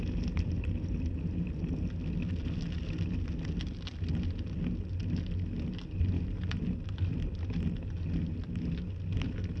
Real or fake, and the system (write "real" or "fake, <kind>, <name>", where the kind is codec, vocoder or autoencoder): real